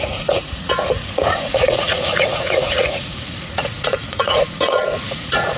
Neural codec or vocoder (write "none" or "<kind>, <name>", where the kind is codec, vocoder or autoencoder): vocoder, Vocos